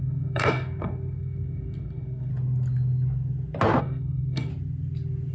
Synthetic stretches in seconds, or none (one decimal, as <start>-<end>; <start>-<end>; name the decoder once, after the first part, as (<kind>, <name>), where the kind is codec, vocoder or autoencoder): 0.0-2.3 (codec, SNAC); 3.8-4.5